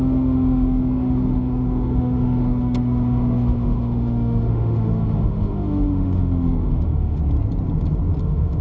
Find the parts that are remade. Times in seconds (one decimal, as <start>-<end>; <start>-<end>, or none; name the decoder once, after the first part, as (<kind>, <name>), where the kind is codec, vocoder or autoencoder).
0.0-7.2 (autoencoder, DAC-VAE); 8.2-8.6